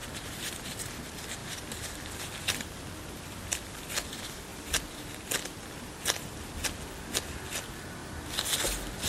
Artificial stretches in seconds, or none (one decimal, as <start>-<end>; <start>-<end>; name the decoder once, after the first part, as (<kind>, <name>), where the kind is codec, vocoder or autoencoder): 0.0-0.5 (vocoder, BigVGAN v2); 1.4-3.0